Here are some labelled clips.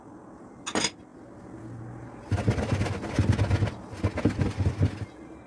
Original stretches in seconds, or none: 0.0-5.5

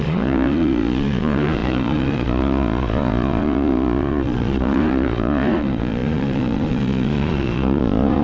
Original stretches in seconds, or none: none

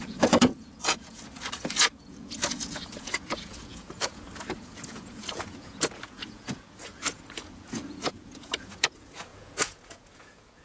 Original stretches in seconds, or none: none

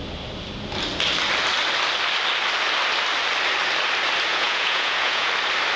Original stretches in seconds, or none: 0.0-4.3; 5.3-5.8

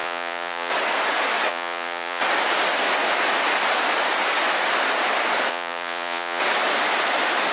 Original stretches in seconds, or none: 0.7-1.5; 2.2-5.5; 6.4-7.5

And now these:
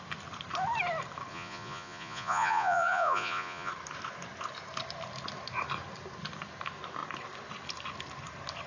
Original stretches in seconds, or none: 0.0-1.3; 3.7-8.7